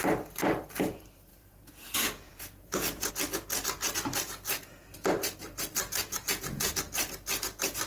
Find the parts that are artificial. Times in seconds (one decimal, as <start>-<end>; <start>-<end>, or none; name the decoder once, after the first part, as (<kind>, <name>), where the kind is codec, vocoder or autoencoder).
1.3-3.1 (vocoder, Vocos); 6.0-6.7